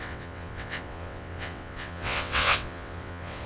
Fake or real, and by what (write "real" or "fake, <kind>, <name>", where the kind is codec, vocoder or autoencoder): fake, vocoder, WaveNeXt